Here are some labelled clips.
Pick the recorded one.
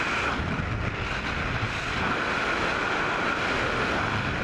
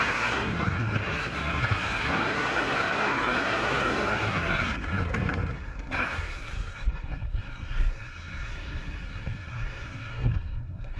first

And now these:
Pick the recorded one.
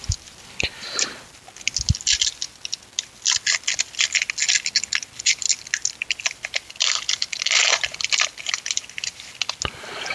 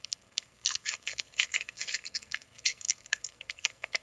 first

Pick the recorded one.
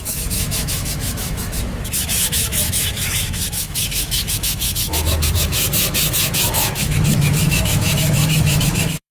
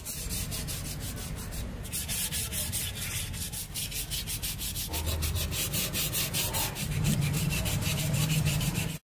second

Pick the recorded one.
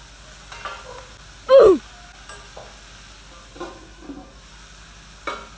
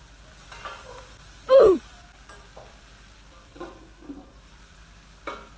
first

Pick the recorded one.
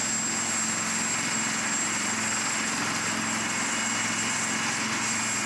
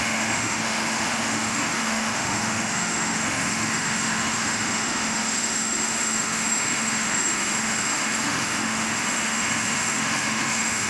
first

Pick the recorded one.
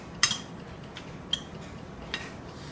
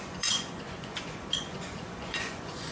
first